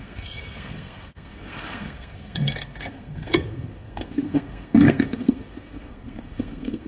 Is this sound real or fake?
fake